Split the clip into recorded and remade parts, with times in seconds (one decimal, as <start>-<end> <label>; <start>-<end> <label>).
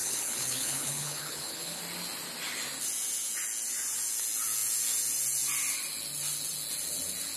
0.0-1.8 remade; 1.8-7.4 recorded